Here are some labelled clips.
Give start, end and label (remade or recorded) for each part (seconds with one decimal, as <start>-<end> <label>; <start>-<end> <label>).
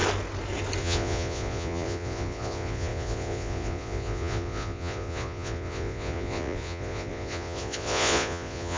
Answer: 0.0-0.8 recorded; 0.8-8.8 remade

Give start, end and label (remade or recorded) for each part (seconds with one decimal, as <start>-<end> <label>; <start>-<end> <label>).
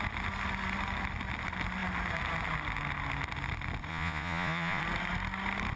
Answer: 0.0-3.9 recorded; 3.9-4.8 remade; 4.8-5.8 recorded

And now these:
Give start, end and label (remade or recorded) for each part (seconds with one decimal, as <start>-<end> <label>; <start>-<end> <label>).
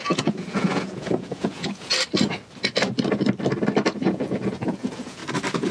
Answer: 0.0-1.9 remade; 1.9-3.9 recorded; 3.9-5.2 remade; 5.2-5.7 recorded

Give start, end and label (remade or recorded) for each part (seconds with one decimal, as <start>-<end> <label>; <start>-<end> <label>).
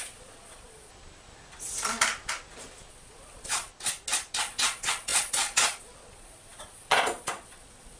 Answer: 0.0-0.9 remade; 0.9-2.9 recorded; 2.9-3.7 remade; 3.7-4.4 recorded; 4.4-8.0 remade